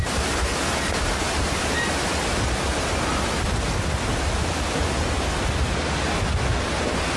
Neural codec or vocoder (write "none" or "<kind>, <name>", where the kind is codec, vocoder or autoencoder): none